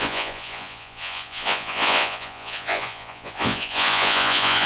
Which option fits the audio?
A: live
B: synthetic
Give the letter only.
B